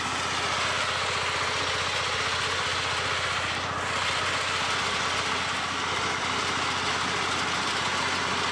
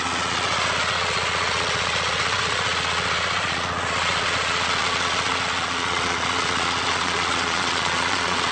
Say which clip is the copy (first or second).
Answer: second